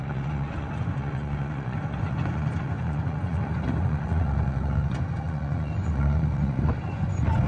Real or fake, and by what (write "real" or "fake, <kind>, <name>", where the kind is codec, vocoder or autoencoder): fake, vocoder, Vocos